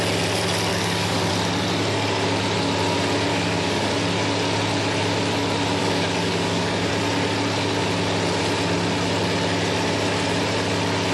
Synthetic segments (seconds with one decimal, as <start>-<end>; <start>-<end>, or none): 0.7-1.3; 3.3-3.9; 5.8-6.9